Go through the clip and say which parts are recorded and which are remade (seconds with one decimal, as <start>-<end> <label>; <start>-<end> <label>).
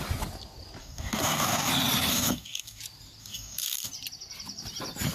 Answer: 0.0-0.8 recorded; 0.8-1.7 remade; 1.7-2.1 recorded; 2.1-2.8 remade; 2.8-3.2 recorded; 3.2-3.9 remade; 3.9-5.1 recorded